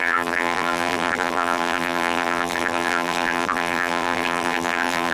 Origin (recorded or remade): remade